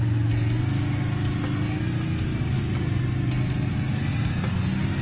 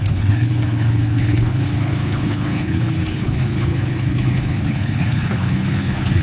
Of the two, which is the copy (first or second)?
second